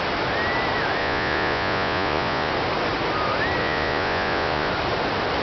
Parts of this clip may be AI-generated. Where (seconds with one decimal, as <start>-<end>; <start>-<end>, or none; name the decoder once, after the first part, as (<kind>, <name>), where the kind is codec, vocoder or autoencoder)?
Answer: 1.0-2.5 (vocoder, Vocos); 3.6-4.7